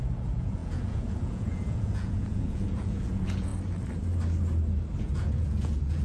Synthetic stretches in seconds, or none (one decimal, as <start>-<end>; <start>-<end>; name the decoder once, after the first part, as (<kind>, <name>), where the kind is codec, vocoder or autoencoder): 0.0-3.5 (vocoder, Vocos); 5.0-6.0